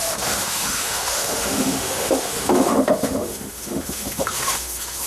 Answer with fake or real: fake